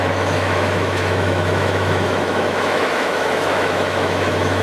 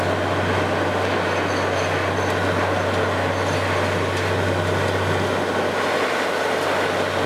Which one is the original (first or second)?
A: second